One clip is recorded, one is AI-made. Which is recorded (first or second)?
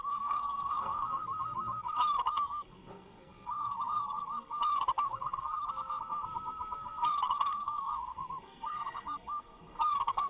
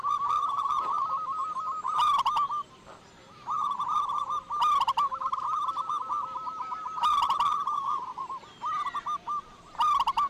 second